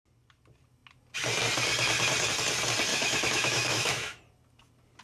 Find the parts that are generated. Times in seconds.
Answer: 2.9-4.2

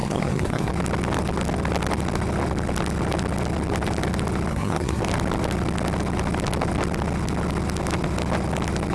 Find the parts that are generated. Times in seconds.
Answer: 0.0-0.7; 4.5-5.0

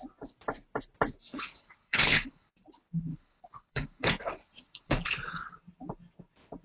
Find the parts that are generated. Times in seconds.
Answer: 1.3-2.5; 3.1-5.6

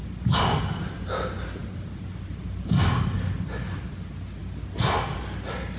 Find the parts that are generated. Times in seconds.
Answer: none